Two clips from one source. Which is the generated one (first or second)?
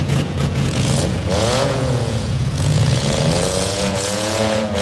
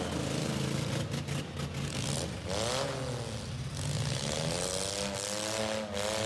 first